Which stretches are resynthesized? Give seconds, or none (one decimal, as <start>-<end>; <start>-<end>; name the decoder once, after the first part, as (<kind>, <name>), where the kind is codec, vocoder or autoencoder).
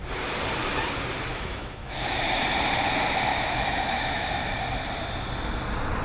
1.3-2.2 (autoencoder, DAC-VAE); 3.3-4.5